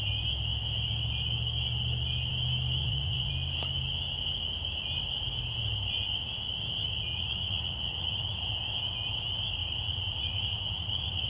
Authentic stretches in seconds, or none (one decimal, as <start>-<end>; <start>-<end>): 0.0-2.8; 3.3-7.1; 8.5-9.6